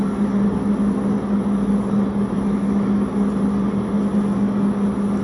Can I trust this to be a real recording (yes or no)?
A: yes